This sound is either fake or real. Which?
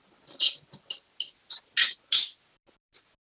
real